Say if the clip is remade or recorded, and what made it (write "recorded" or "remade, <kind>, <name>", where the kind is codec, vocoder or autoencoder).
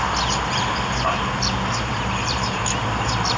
recorded